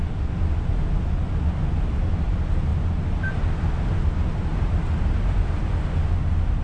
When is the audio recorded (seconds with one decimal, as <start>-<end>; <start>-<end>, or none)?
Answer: 0.0-2.7; 3.4-4.5; 5.6-6.6